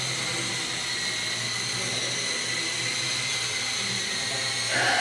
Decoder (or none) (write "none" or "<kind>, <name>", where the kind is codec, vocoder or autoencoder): none